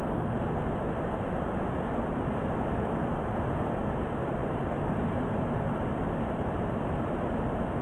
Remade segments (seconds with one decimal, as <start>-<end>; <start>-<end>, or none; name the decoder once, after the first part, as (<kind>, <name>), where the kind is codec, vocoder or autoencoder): 4.4-6.9 (vocoder, BigVGAN v2)